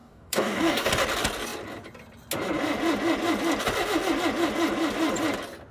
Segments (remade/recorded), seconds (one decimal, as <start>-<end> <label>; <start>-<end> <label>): 0.0-0.9 remade; 0.9-5.7 recorded